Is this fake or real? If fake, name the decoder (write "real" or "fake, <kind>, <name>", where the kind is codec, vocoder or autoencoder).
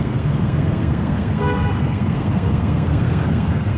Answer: fake, codec, SNAC